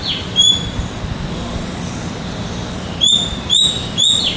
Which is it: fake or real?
real